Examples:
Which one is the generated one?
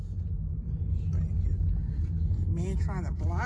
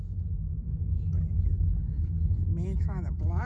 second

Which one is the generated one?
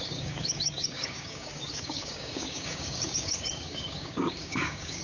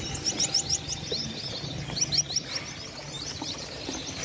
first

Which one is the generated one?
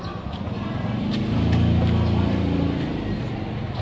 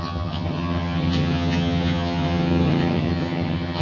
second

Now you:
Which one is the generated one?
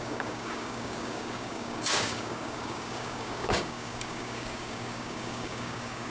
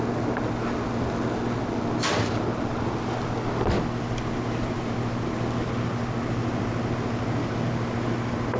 first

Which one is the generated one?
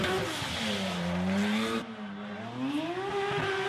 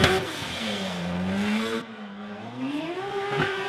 second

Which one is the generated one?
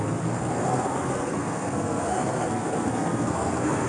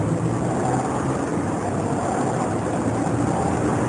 first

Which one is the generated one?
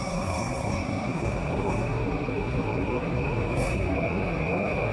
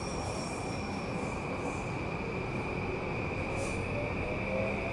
first